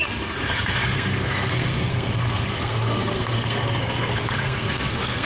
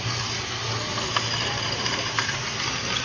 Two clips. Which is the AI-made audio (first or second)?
first